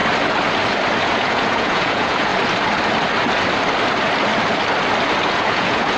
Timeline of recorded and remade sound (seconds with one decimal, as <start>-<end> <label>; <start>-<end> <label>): 0.0-1.0 recorded; 1.0-2.3 remade; 2.3-5.3 recorded; 5.3-6.0 remade